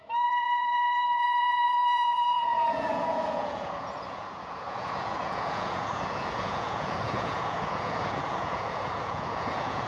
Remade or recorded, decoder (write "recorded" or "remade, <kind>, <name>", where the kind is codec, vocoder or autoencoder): remade, vocoder, Vocos